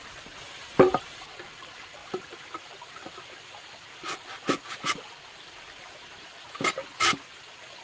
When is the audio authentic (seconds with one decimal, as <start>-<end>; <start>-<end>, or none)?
0.0-7.8